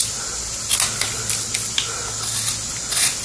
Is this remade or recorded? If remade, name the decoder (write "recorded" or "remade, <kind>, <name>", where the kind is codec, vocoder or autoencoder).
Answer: recorded